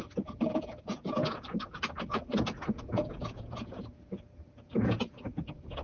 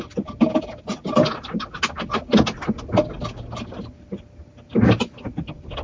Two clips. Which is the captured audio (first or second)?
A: second